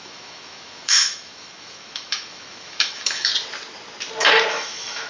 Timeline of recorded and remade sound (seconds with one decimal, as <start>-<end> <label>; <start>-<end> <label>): 0.0-3.3 remade; 3.3-4.5 recorded; 4.5-5.1 remade